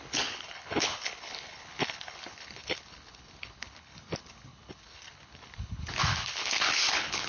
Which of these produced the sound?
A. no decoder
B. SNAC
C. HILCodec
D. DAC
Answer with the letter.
C